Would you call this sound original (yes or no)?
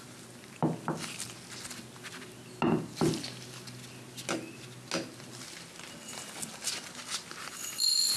yes